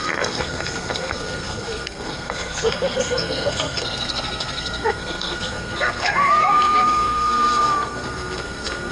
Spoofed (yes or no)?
yes